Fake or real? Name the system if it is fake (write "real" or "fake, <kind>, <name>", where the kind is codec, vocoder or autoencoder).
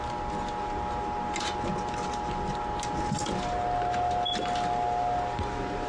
real